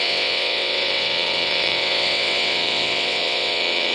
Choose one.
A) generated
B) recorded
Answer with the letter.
A